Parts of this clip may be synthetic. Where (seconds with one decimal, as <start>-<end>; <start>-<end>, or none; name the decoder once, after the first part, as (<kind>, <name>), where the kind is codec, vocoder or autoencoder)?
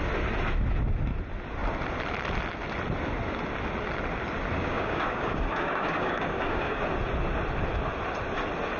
4.6-6.8 (codec, DAC)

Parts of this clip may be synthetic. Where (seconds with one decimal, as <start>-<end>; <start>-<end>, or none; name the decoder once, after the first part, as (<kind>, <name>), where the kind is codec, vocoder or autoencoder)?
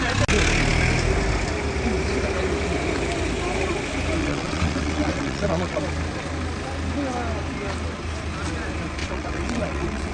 4.2-5.8 (vocoder, WaveNeXt); 9.0-10.1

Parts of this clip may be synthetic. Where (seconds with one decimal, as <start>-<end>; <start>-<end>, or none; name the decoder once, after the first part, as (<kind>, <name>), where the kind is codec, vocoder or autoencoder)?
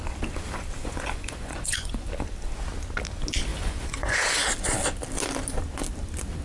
0.8-2.1 (vocoder, Vocos); 3.5-4.2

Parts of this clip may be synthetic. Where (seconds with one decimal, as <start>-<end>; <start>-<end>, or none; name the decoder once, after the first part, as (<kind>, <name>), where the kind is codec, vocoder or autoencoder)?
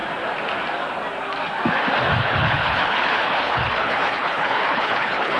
2.2-5.4 (codec, HILCodec)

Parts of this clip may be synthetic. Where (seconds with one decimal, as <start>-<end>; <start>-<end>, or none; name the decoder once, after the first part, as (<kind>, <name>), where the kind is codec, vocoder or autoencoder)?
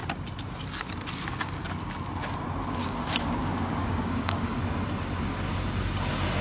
2.8-4.6 (codec, DAC)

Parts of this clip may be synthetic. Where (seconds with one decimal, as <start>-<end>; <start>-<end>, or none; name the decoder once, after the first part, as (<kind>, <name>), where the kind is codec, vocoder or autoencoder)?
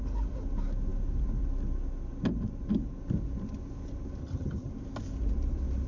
4.2-4.7 (vocoder, HiFi-GAN)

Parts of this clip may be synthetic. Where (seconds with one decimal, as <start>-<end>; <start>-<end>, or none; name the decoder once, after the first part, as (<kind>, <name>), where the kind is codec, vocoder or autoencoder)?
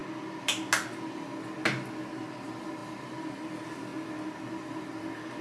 none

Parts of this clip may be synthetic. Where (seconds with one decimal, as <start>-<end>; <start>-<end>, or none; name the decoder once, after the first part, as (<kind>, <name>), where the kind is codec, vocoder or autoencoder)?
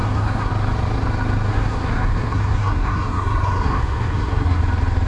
0.0-0.5 (codec, SNAC); 1.5-4.6